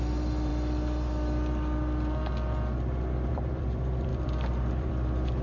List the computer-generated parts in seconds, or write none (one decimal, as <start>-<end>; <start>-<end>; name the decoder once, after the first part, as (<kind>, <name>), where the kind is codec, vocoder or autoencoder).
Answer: 0.0-0.5 (vocoder, BigVGAN v2); 3.3-5.4